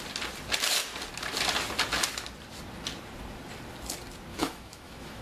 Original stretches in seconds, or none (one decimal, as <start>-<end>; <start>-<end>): 0.0-4.3